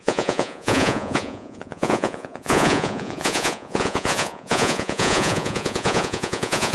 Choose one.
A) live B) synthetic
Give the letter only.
B